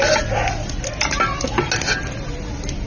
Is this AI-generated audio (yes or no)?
no